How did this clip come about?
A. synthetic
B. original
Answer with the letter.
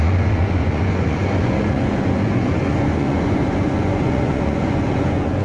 A